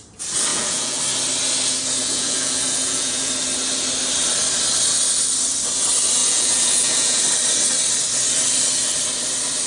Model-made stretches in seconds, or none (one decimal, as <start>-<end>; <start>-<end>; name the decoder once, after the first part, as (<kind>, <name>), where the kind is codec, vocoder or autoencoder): 0.5-1.0 (vocoder, Vocos); 2.0-3.3; 6.2-7.2